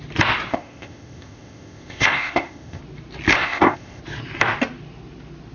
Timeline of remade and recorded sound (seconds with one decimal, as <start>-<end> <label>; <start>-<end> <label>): 0.0-0.5 recorded; 0.5-2.8 remade; 2.8-3.3 recorded; 3.3-4.0 remade; 4.0-5.5 recorded